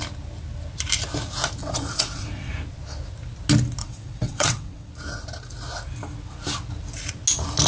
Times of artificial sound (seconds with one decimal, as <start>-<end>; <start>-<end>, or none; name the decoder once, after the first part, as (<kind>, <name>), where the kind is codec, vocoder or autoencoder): 1.6-2.5 (vocoder, WaveNeXt); 3.8-4.9

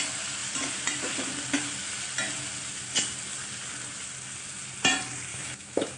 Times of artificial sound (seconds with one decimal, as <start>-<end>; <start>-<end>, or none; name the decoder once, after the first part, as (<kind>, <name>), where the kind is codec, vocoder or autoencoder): 5.3-6.0 (autoencoder, DAC-VAE)

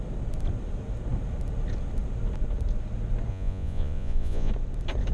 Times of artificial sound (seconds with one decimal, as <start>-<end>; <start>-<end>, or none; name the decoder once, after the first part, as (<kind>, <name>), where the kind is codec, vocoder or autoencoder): 3.3-4.5 (vocoder, Vocos)

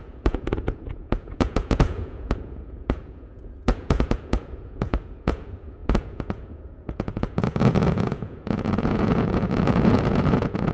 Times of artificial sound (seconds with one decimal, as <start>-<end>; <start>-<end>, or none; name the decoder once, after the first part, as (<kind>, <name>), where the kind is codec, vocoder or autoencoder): 0.0-10.7 (vocoder, Vocos)

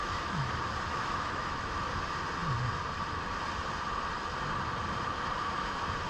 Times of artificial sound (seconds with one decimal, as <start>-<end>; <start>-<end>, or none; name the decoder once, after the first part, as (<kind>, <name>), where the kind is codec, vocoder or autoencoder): 0.0-0.5 (autoencoder, DAC-VAE); 0.9-1.9

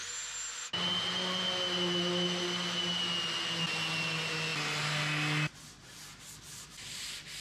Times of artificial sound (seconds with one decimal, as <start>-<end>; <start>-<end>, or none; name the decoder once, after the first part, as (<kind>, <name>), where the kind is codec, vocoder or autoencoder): none

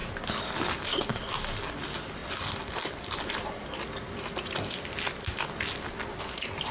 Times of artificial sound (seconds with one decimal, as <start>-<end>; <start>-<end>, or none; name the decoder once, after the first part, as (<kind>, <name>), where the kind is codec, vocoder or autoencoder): none